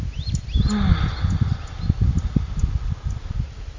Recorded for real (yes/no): yes